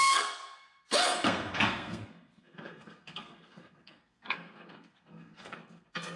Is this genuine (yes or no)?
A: no